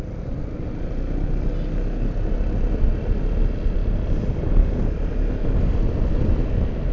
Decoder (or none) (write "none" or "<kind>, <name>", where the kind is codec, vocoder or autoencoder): none